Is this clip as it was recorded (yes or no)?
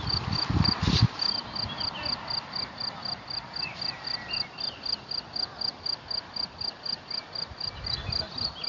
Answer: yes